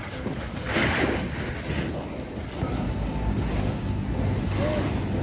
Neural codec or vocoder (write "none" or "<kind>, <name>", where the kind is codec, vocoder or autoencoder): none